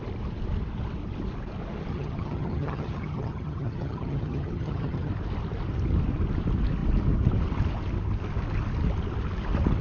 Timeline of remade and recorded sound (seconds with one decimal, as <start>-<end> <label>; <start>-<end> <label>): 0.0-1.9 recorded; 1.9-5.1 remade; 5.1-9.8 recorded